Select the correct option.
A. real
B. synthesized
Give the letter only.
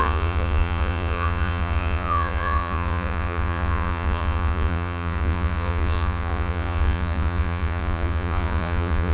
B